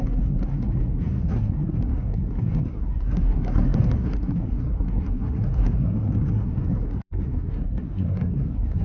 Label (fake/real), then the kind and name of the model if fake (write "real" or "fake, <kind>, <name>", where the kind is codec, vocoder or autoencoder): fake, codec, SNAC